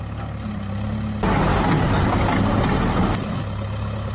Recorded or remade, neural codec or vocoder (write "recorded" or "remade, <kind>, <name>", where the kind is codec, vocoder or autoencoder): recorded